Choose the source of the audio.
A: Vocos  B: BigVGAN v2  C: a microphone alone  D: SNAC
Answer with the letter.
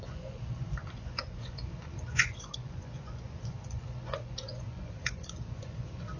A